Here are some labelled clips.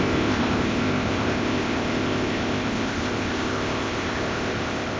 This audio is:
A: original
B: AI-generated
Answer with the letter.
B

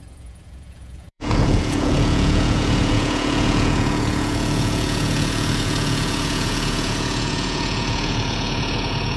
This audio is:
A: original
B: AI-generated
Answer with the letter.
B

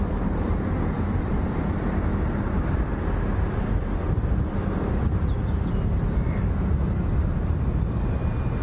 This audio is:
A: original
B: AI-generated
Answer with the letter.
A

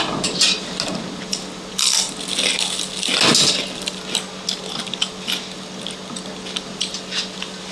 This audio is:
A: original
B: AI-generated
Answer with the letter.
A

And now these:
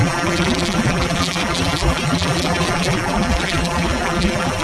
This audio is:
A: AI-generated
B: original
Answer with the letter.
A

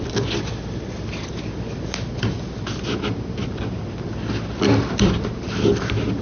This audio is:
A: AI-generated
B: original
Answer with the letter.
B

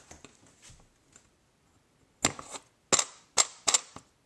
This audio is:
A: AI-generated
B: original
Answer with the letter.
B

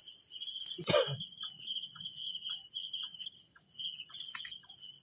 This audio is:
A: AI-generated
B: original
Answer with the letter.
B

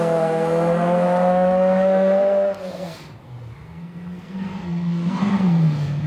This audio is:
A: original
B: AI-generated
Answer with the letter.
B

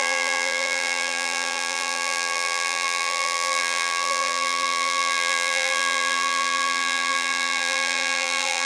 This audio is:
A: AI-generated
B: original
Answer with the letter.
A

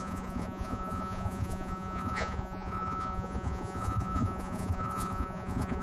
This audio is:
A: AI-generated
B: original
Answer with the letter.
A